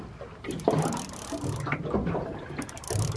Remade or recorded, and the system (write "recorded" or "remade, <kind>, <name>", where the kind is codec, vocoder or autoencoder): recorded